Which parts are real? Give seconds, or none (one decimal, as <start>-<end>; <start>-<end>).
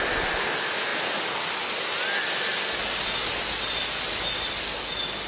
0.0-5.3